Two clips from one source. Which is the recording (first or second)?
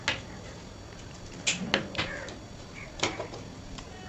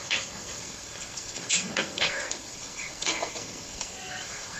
first